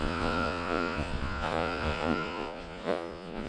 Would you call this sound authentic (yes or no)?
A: no